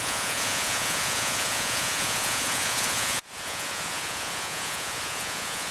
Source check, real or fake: fake